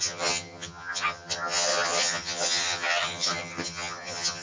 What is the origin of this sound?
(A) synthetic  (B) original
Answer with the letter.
A